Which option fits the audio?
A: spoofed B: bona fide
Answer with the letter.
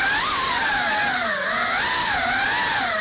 B